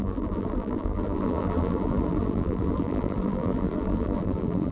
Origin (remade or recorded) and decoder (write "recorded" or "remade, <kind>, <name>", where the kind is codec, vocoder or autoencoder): remade, vocoder, BigVGAN v2